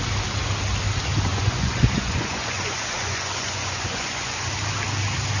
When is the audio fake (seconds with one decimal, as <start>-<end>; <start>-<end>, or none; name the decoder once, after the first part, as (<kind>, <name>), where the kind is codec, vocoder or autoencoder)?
1.3-4.5 (vocoder, Vocos)

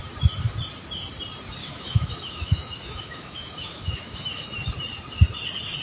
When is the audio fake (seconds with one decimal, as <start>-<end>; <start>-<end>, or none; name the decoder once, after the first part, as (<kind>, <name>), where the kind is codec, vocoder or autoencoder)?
1.6-4.7 (autoencoder, DAC-VAE)